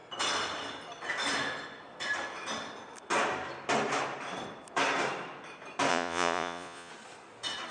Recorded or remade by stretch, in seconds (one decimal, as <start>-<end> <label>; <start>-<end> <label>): 0.0-5.9 recorded; 5.9-6.9 remade; 6.9-7.7 recorded